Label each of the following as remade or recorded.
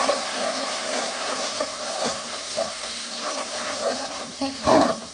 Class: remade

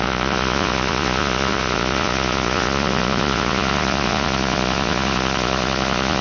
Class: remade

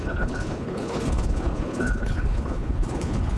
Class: remade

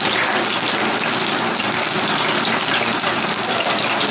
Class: recorded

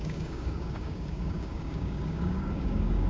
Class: remade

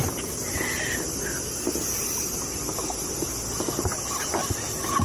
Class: recorded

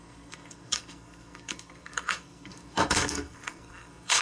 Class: remade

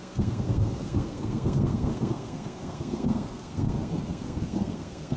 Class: remade